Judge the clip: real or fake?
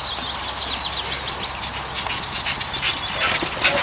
real